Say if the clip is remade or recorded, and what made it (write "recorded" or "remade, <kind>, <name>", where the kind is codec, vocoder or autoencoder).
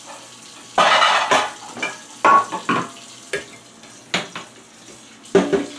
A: recorded